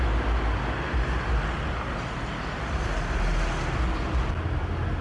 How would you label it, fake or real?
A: real